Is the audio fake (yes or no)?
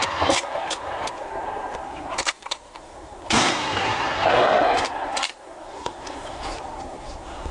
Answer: yes